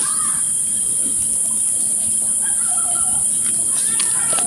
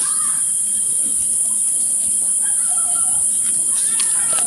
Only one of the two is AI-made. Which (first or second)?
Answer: first